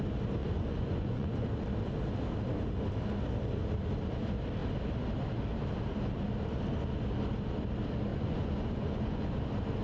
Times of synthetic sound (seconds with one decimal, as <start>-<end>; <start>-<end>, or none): 0.4-1.5; 8.1-9.4